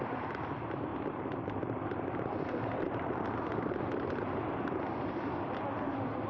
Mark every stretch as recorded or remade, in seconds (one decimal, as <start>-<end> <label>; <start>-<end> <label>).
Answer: 0.0-0.9 recorded; 0.9-4.1 remade; 4.1-6.3 recorded